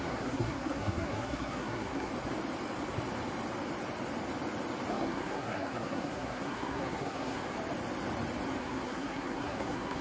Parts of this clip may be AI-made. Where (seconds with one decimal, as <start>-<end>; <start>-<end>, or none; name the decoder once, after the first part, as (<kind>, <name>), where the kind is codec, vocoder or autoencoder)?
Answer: 0.0-2.1 (codec, SNAC); 4.9-7.4; 8.6-10.0